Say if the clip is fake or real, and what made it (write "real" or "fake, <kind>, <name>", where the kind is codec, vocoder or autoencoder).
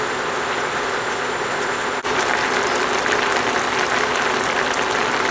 real